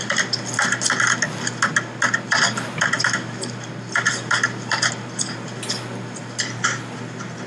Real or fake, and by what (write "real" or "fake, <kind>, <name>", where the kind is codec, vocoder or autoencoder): real